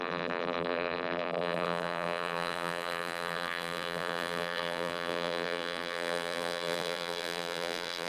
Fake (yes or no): yes